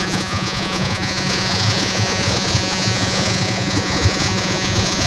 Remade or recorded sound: remade